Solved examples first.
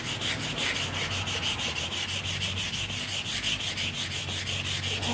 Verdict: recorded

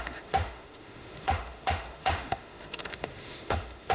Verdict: remade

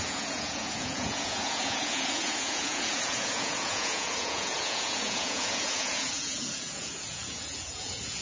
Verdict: remade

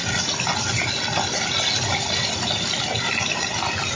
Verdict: recorded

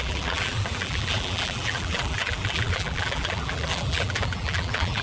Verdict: remade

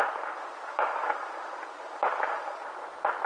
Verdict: remade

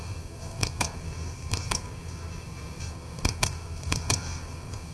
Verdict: remade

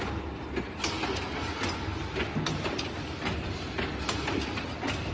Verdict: recorded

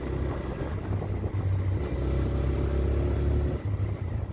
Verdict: recorded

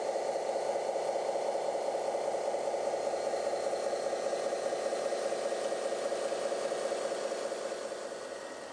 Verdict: recorded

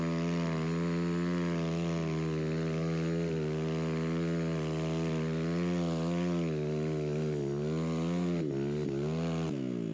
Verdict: recorded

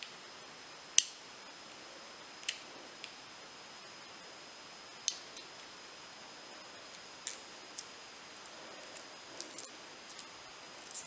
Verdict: recorded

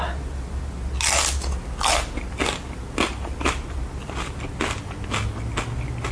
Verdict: recorded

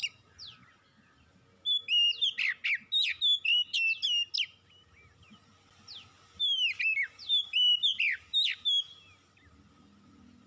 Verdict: recorded